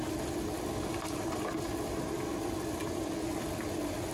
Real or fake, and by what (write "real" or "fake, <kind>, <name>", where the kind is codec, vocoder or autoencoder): real